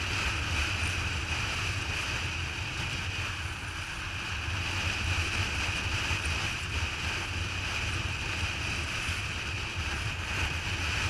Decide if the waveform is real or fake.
real